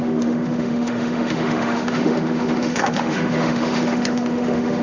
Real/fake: fake